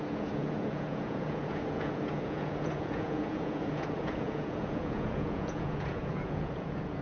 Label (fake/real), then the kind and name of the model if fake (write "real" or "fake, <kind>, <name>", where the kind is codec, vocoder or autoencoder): fake, vocoder, Vocos